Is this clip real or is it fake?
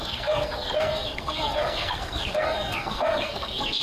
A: fake